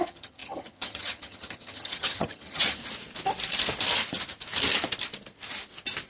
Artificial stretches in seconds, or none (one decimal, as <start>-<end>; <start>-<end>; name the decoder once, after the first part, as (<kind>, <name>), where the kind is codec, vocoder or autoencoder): 0.0-2.8 (vocoder, HiFi-GAN)